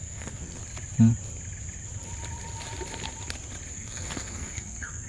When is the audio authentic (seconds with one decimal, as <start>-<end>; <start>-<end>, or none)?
0.6-3.7